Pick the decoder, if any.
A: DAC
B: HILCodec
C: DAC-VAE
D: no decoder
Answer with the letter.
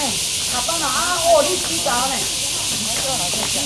D